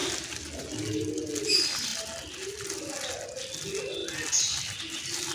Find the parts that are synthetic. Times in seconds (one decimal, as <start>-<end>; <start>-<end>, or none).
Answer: none